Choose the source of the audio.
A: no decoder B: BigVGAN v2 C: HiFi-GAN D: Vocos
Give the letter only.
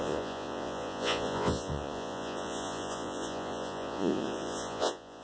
D